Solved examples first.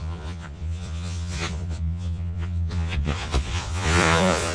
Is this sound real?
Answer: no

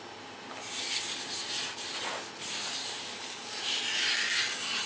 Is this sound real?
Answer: yes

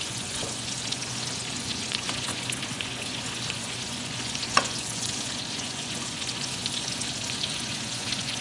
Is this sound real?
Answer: no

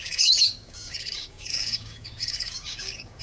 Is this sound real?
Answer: no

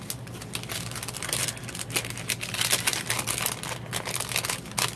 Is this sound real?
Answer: yes